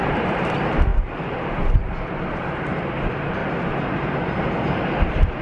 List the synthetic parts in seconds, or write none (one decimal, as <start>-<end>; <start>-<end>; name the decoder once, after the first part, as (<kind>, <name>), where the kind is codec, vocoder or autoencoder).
0.0-3.4 (vocoder, BigVGAN v2); 3.9-5.4